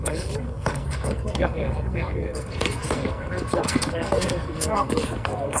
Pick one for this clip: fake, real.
fake